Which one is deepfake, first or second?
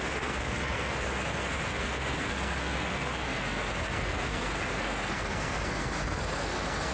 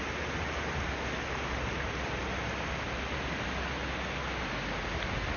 first